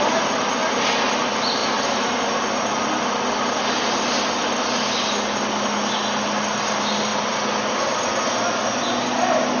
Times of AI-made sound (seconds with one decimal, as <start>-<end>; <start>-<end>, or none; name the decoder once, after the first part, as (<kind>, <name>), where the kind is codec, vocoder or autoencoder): none